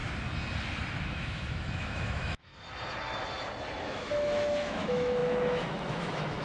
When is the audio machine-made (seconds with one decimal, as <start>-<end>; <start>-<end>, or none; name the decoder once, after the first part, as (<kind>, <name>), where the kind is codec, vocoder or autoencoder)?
1.0-2.5 (autoencoder, DAC-VAE); 3.8-6.4